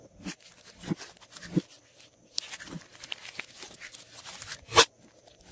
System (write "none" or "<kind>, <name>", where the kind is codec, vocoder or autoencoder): none